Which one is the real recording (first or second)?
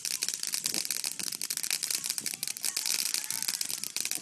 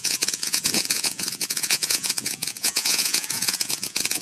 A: first